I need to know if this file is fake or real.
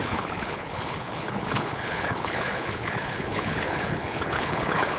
fake